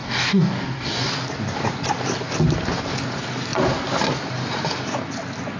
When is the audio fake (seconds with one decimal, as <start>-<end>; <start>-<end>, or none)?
0.0-1.1